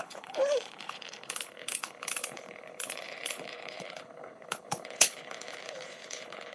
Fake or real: fake